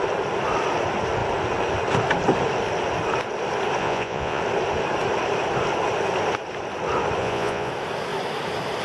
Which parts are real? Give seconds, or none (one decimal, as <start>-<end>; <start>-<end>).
0.0-3.8; 4.4-7.2; 7.7-8.8